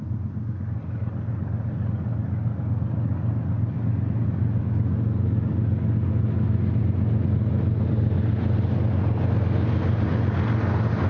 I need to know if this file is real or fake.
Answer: real